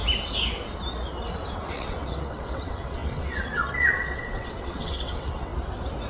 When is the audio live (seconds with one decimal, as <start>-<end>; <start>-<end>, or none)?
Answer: 0.0-1.7; 5.5-6.1